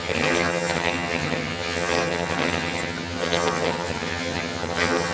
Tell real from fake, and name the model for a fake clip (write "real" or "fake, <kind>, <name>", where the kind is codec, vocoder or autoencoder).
fake, vocoder, HiFi-GAN